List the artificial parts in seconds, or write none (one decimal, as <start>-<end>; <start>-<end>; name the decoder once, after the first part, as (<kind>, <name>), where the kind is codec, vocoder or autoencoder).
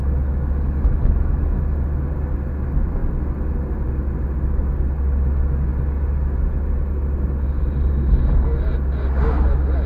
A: 0.0-1.6 (autoencoder, DAC-VAE)